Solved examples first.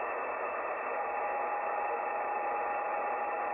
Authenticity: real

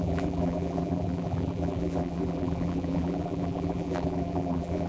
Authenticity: fake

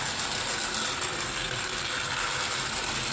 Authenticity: real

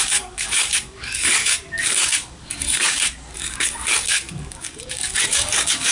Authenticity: fake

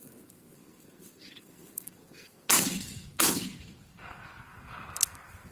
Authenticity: fake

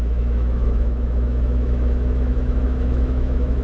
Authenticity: fake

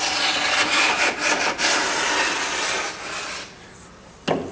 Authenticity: real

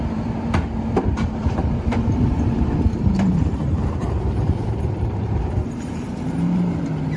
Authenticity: fake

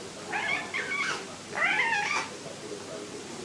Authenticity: real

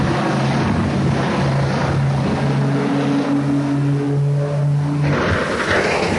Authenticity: real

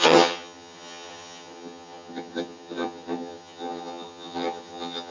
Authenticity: fake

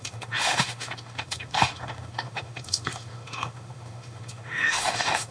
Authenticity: fake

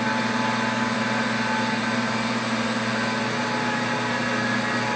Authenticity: real